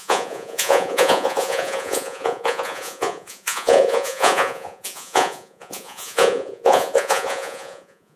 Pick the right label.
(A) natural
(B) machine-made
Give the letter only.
B